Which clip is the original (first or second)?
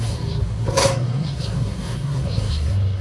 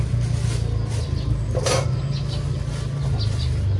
second